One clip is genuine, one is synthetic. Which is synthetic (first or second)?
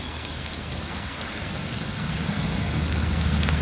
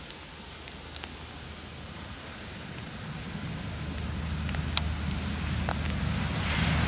first